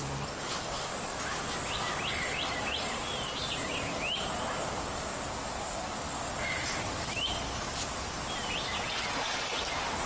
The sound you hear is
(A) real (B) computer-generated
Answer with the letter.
A